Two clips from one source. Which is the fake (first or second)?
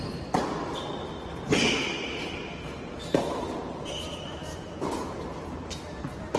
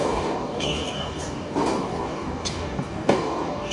second